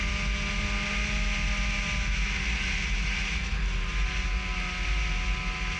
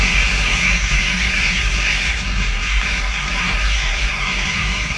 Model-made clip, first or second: second